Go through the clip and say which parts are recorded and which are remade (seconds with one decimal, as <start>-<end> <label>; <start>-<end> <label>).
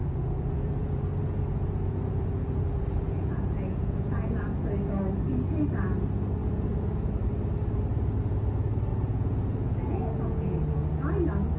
0.0-4.6 remade; 4.6-6.4 recorded; 6.4-7.1 remade; 7.1-8.9 recorded; 8.9-11.0 remade; 11.0-11.6 recorded